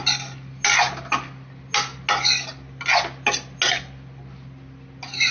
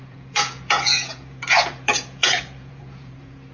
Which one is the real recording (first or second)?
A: first